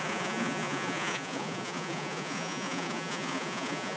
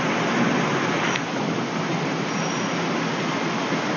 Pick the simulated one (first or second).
first